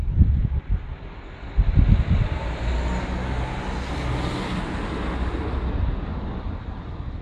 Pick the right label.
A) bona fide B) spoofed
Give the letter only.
A